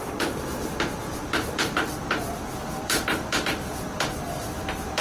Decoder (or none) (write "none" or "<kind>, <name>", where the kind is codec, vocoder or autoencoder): vocoder, BigVGAN v2